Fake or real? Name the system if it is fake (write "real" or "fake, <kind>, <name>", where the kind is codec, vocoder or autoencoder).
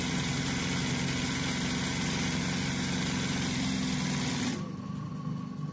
real